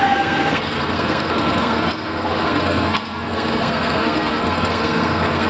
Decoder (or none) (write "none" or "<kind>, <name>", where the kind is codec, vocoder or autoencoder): codec, SNAC